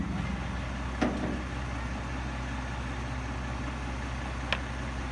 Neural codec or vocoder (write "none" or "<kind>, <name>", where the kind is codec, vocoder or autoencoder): none